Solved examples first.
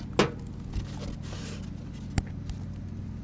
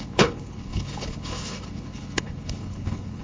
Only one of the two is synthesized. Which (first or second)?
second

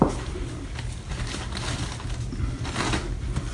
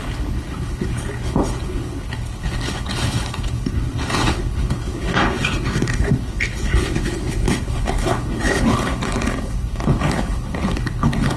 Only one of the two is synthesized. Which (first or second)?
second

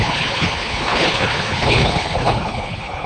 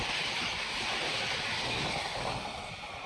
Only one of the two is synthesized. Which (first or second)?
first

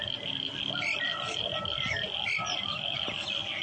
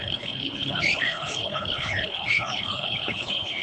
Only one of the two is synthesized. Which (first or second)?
second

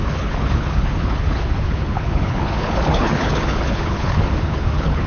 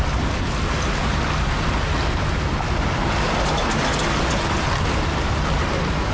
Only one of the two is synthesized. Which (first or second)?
first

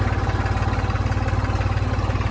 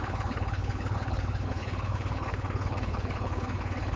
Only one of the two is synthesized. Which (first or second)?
second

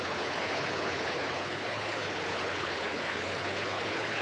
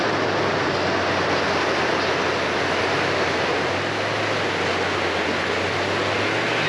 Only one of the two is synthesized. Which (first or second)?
first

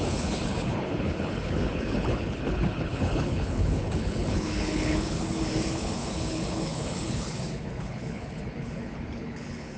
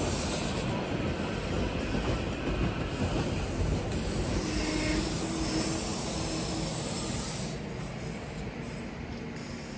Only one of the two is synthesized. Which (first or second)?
first